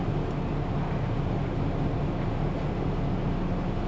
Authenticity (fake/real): real